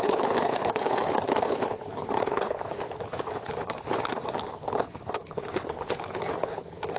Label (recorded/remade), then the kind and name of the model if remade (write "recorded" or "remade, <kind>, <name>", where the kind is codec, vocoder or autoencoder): remade, codec, HILCodec